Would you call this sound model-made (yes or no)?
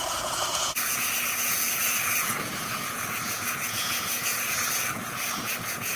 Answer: yes